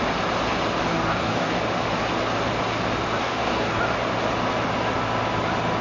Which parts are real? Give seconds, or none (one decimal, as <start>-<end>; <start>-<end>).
0.0-0.9; 1.6-3.2; 3.8-5.8